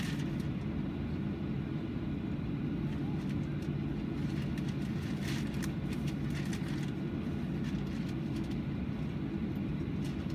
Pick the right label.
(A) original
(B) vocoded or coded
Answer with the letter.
A